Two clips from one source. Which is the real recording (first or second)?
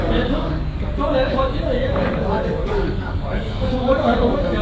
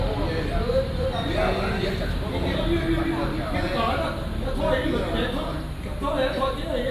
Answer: second